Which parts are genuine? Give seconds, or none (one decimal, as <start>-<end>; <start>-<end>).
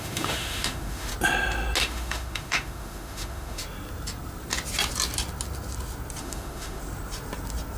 1.1-1.8; 3.6-6.2; 6.8-7.8